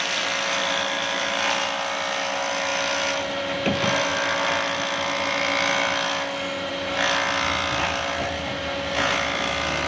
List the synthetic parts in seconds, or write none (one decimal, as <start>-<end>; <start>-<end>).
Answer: none